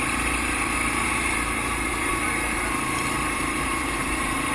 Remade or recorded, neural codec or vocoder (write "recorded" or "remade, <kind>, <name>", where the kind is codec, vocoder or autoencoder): remade, vocoder, BigVGAN v2